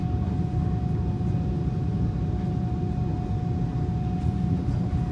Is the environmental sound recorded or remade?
recorded